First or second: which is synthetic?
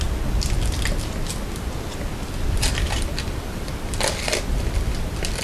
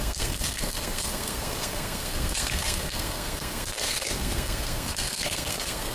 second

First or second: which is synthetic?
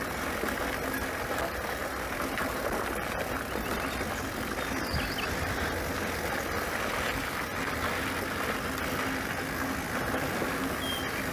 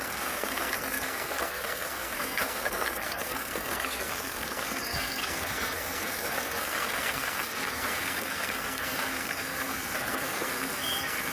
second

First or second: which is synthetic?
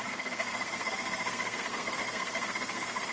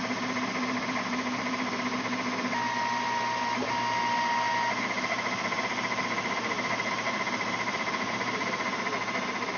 first